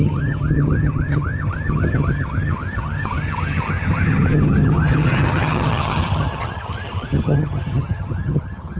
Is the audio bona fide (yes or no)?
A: no